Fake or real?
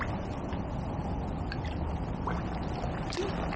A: real